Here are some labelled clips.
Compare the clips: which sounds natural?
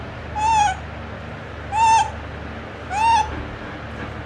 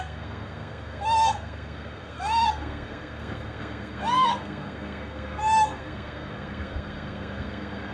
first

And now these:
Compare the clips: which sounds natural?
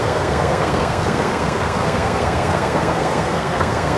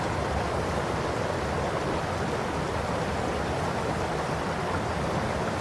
second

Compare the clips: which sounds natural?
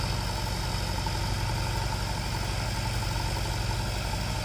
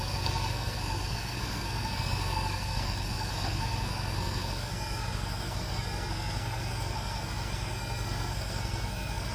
first